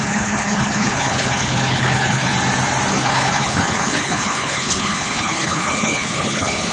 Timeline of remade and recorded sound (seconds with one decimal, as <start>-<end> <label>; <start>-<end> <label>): 0.0-2.3 remade; 2.3-2.9 recorded; 2.9-6.7 remade